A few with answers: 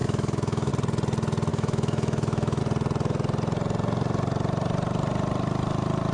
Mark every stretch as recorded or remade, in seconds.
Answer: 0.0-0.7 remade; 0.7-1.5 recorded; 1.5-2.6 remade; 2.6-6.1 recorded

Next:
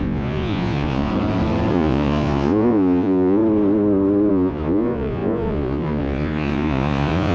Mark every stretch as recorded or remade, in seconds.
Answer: 0.0-1.1 remade; 1.1-1.7 recorded; 1.7-3.4 remade; 3.4-4.3 recorded; 4.3-7.3 remade

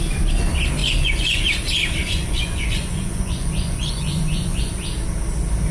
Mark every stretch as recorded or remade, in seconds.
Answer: 0.0-0.8 recorded; 0.8-1.4 remade; 1.4-2.0 recorded; 2.0-4.7 remade; 4.7-5.7 recorded

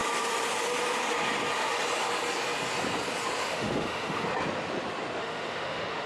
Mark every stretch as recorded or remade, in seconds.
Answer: 0.0-3.4 recorded; 3.4-4.3 remade; 4.3-5.2 recorded; 5.2-6.1 remade

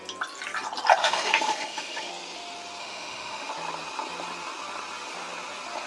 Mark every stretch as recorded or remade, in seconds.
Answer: 0.0-1.0 recorded; 1.0-2.1 remade; 2.1-2.8 recorded; 2.8-3.5 remade; 3.5-5.9 recorded

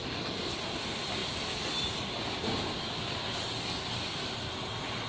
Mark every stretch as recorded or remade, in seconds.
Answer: 0.0-5.1 recorded

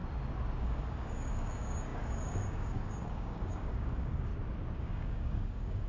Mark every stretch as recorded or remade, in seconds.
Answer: 0.0-0.6 recorded; 0.6-4.3 remade; 4.3-4.8 recorded; 4.8-5.9 remade